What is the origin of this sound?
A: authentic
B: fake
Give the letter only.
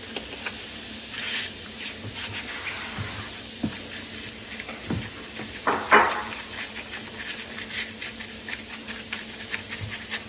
A